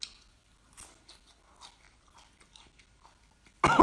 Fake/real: real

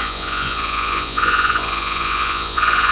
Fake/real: fake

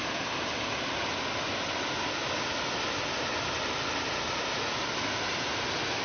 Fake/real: real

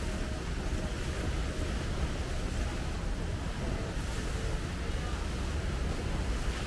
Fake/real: real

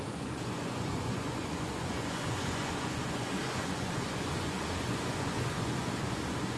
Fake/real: fake